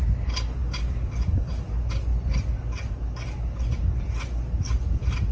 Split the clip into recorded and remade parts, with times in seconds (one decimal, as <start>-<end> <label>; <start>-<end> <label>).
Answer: 0.0-5.3 recorded